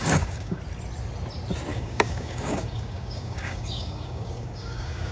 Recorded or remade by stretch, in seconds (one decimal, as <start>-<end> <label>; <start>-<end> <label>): 0.0-0.6 remade; 0.6-1.7 recorded; 1.7-5.1 remade